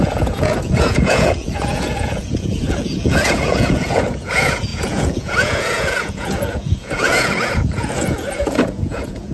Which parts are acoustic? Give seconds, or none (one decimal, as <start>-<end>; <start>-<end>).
none